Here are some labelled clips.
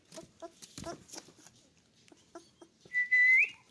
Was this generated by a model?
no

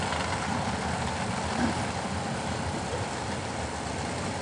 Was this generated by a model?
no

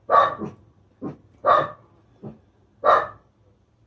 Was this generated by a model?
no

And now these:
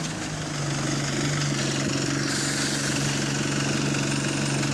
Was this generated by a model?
no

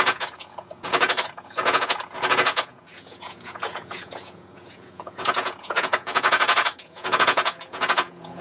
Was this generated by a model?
yes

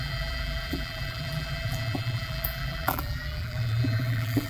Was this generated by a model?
yes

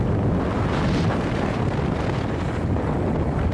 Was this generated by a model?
no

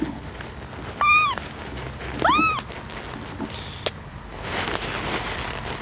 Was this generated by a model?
no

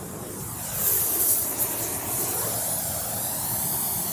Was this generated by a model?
no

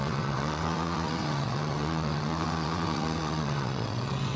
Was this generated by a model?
yes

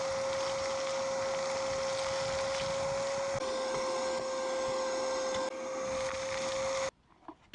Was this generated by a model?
no